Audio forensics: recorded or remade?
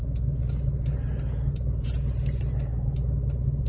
recorded